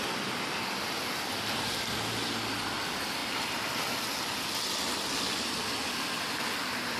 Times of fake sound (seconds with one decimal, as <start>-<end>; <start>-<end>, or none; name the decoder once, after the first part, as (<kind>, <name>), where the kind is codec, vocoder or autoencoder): none